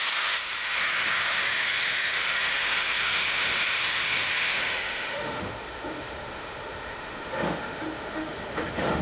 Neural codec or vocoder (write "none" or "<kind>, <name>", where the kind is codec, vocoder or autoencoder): autoencoder, DAC-VAE